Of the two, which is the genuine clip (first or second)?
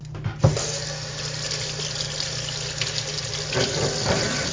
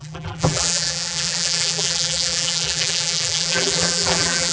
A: first